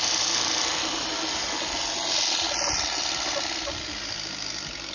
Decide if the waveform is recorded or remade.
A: recorded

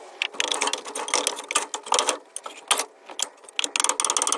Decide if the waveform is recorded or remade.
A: recorded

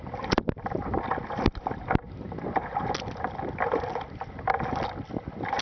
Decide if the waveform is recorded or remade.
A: recorded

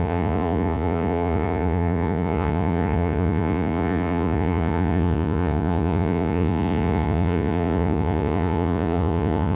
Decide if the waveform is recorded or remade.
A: remade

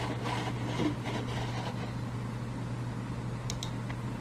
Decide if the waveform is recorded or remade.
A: recorded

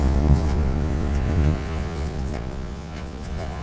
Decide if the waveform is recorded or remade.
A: remade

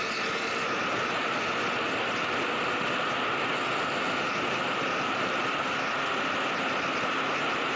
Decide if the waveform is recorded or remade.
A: recorded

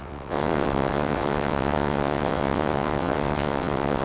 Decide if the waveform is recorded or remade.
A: remade